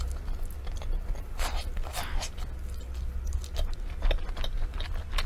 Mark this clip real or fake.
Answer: real